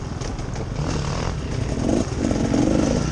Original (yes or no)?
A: yes